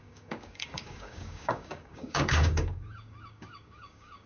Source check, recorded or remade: remade